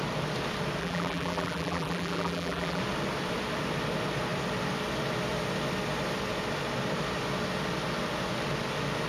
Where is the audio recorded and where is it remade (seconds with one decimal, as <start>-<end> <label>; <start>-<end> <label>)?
0.0-0.8 recorded; 0.8-2.8 remade; 2.8-9.1 recorded